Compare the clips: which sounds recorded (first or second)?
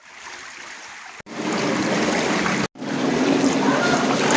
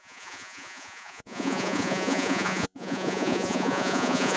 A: first